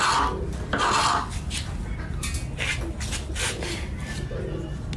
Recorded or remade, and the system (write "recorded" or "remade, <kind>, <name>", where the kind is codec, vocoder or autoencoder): recorded